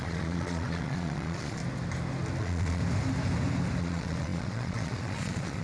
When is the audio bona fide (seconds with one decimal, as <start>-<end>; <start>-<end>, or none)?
1.6-2.4; 2.8-3.8